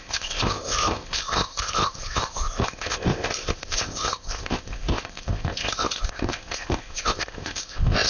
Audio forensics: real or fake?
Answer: fake